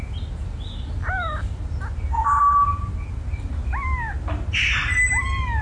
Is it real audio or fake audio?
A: real